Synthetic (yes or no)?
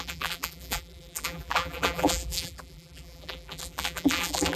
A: yes